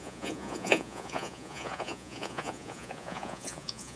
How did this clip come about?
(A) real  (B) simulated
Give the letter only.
B